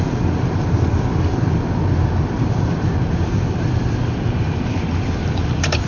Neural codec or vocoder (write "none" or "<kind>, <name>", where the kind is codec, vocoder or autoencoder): vocoder, BigVGAN v2